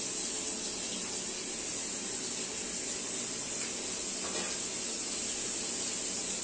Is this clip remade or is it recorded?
recorded